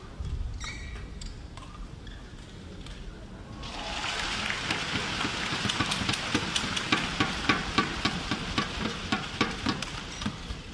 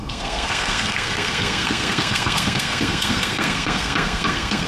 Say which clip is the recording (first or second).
first